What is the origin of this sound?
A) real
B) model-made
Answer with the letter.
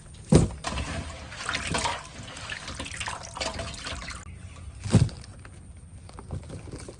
A